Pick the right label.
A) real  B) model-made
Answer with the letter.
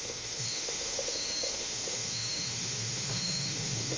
B